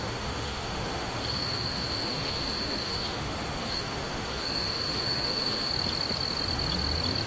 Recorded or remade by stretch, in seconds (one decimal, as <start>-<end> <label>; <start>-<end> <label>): 0.0-5.7 remade; 5.7-7.3 recorded